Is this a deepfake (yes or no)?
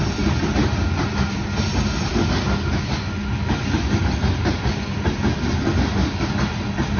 no